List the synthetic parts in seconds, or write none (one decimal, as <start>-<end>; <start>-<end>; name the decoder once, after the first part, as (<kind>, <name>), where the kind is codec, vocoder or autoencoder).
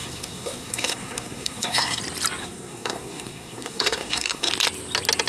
0.0-2.0 (codec, SNAC); 2.4-4.5